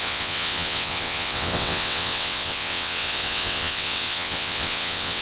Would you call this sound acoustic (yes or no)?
no